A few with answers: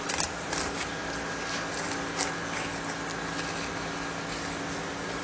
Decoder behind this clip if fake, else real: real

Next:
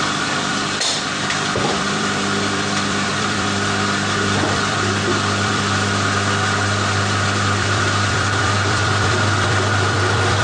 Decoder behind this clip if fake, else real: fake, vocoder, BigVGAN v2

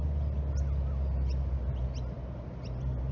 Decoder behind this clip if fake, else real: real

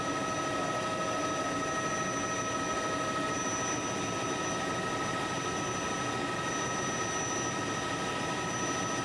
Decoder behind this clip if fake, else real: real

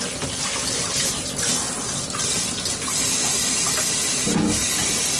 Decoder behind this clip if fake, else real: real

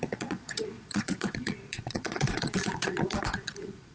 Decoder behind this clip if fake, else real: fake, vocoder, Vocos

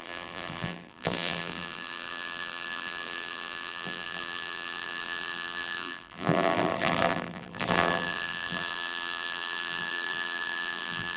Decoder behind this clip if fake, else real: fake, vocoder, BigVGAN v2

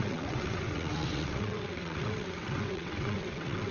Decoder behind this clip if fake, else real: fake, vocoder, WaveNeXt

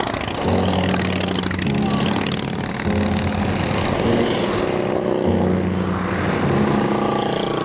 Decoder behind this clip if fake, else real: real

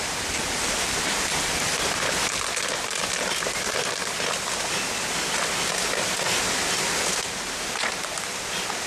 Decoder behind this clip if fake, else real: real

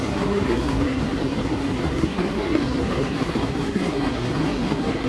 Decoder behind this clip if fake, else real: fake, codec, SNAC